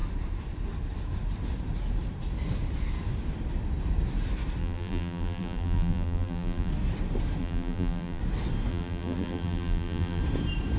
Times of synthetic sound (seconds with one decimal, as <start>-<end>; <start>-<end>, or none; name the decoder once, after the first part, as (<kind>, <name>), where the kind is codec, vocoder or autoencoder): 4.6-6.7 (vocoder, BigVGAN v2); 7.4-8.2; 8.7-10.2